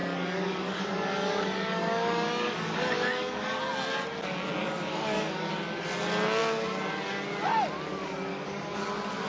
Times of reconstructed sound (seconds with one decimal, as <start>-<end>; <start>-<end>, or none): 0.0-3.6; 4.6-5.5; 8.3-8.9